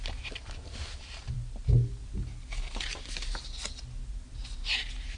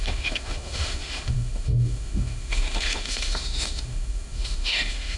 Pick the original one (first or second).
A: first